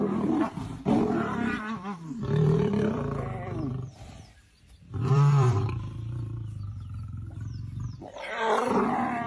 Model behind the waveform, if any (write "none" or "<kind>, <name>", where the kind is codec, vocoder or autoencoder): vocoder, BigVGAN v2